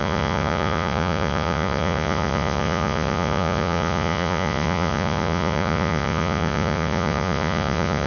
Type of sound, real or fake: fake